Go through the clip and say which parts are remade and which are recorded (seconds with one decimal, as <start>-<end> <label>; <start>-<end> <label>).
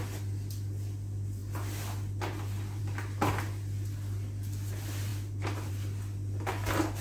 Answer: 0.0-7.0 recorded